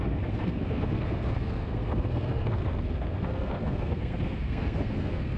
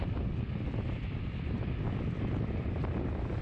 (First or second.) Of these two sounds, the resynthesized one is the first